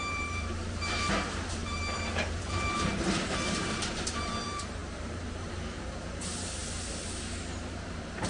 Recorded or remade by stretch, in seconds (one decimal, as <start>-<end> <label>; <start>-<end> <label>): 0.0-6.6 remade; 6.6-7.8 recorded; 7.8-8.3 remade